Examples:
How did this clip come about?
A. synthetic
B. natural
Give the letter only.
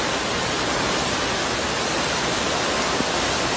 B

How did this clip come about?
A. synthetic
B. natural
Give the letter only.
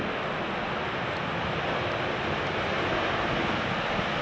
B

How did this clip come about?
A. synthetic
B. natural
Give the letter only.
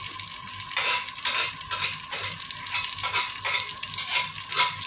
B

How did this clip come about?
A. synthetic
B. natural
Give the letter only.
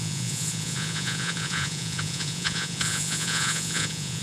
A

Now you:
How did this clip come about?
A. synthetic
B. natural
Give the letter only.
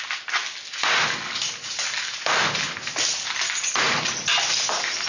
B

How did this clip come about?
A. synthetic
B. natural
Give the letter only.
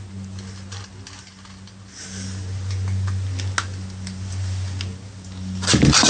B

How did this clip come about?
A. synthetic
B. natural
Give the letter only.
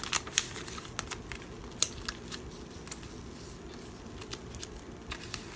B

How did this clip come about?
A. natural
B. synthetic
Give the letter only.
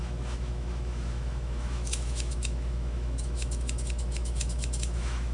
B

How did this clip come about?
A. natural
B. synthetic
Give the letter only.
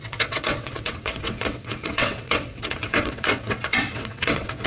B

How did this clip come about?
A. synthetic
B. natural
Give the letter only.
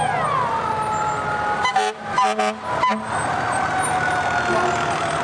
B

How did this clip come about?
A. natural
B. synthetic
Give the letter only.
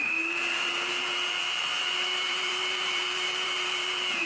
B